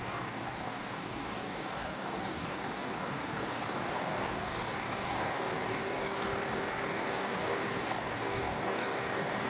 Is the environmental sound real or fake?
fake